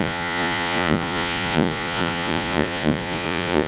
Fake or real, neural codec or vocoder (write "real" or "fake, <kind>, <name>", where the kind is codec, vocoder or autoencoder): fake, vocoder, Vocos